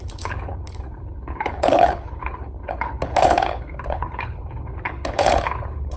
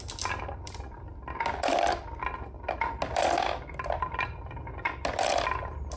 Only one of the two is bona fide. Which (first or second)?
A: second